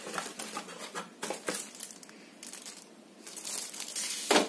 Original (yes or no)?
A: yes